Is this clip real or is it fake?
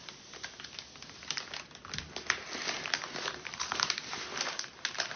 real